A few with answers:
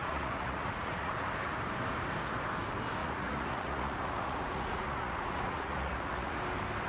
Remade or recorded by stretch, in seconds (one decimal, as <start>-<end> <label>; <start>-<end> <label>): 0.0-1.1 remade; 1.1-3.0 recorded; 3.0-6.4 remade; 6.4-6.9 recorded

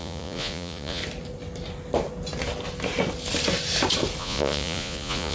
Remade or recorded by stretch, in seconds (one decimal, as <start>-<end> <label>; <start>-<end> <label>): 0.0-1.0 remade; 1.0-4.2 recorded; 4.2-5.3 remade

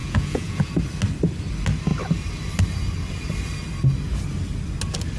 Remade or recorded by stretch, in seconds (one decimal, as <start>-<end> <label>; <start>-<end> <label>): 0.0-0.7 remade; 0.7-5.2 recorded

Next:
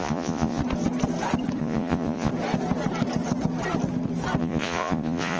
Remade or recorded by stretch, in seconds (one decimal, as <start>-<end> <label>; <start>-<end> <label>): 0.0-0.6 remade; 0.6-1.6 recorded; 1.6-2.3 remade; 2.3-4.4 recorded; 4.4-5.4 remade

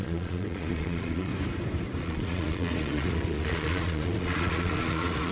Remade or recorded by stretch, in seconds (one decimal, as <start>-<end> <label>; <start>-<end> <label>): 0.0-1.3 remade; 1.3-2.0 recorded; 2.0-5.3 remade

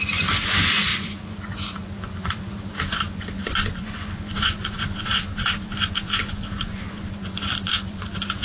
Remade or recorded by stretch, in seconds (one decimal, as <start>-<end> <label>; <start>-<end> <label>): 0.0-8.4 remade

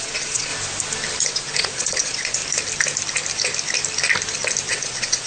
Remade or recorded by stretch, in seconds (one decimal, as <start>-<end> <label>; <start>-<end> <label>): 0.0-0.5 remade; 0.5-1.2 recorded; 1.2-2.4 remade; 2.4-4.7 recorded; 4.7-5.3 remade